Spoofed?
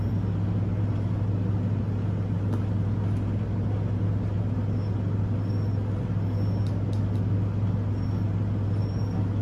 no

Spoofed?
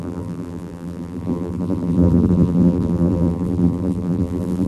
yes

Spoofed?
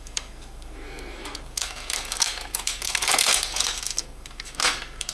yes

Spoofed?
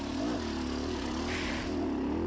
no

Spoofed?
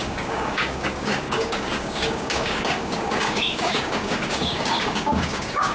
yes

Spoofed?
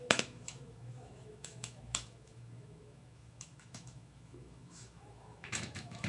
yes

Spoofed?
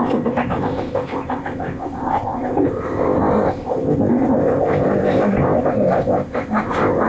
yes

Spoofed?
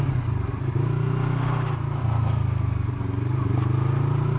no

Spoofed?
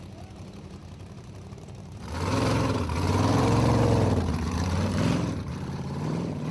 yes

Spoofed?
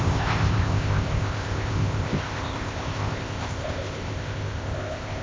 yes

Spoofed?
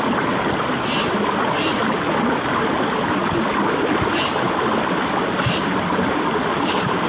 no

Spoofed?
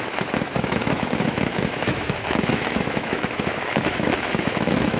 yes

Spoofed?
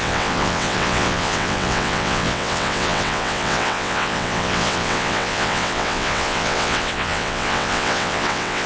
yes